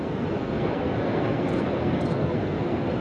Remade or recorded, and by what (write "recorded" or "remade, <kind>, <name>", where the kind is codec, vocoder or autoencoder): remade, codec, SNAC